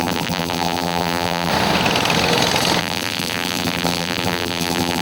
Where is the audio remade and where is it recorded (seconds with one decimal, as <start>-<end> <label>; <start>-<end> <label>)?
0.0-1.5 remade; 1.5-2.8 recorded; 2.8-5.0 remade